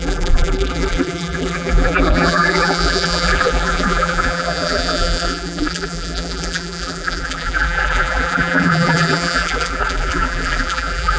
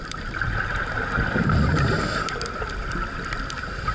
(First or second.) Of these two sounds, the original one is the second